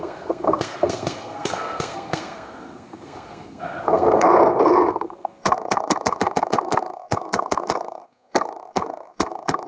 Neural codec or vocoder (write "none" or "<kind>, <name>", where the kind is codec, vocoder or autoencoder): codec, SNAC